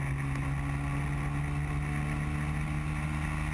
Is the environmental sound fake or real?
real